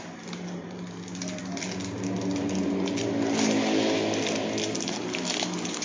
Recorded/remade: recorded